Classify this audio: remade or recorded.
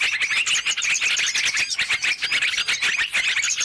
recorded